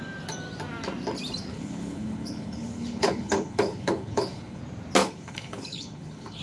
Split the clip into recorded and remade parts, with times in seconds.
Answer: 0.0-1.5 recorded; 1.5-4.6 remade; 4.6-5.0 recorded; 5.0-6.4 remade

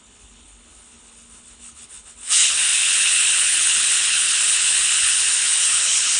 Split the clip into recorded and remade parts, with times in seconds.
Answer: 0.0-6.2 remade